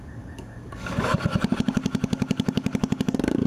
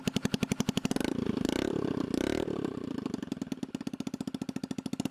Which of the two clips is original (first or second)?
second